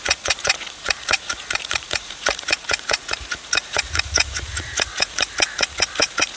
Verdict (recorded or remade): remade